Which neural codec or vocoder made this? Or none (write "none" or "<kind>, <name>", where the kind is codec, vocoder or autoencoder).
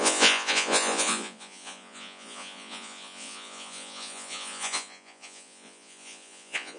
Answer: vocoder, Vocos